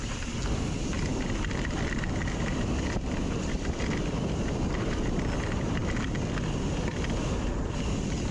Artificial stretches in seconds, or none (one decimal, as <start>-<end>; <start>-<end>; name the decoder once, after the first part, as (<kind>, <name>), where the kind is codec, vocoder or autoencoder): none